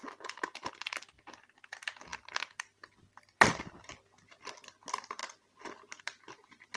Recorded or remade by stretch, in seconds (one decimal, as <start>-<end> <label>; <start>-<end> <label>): 0.0-0.7 recorded; 0.7-5.2 remade; 5.2-6.0 recorded; 6.0-6.8 remade